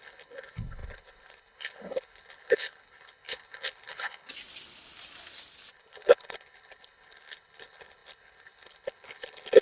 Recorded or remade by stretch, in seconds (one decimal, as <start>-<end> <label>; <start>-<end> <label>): 0.0-4.3 remade; 4.3-5.7 recorded; 5.7-9.6 remade